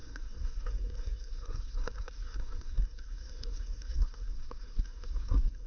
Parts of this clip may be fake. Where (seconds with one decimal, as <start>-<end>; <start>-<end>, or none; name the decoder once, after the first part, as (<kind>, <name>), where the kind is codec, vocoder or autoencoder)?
0.0-5.7 (codec, SNAC)